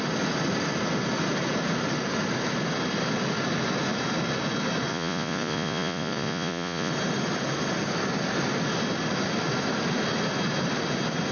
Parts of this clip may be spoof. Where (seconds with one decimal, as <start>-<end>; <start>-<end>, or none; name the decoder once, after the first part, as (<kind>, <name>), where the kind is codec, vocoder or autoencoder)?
4.9-6.9 (vocoder, Vocos)